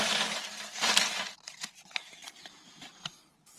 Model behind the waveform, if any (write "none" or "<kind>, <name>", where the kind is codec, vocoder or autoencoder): vocoder, BigVGAN v2